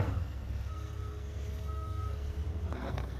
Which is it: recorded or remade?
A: remade